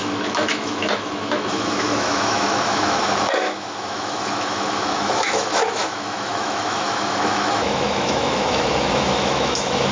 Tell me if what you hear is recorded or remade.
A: remade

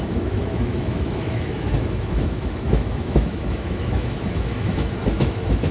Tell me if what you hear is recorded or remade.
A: remade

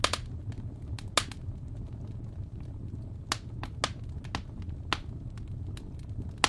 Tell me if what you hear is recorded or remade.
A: recorded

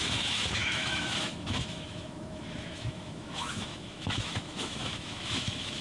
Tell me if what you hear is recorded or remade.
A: remade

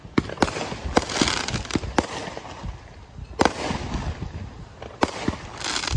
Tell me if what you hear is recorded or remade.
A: recorded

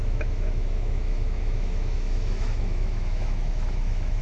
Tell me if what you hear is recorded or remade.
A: remade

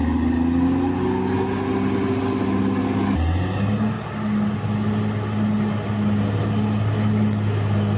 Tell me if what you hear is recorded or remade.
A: recorded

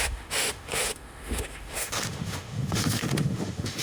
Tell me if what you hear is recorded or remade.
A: remade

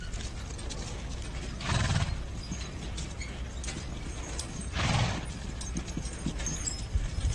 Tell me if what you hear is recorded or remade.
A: recorded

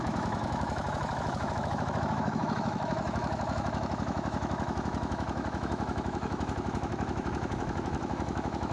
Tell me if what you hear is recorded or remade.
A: remade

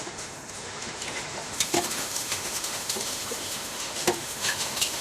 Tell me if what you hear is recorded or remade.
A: remade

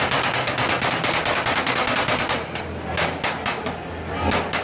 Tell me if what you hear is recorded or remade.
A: recorded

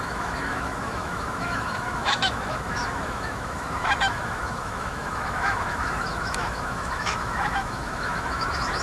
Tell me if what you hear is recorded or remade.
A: remade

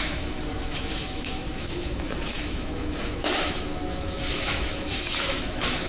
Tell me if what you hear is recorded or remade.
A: remade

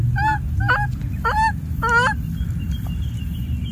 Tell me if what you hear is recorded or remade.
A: recorded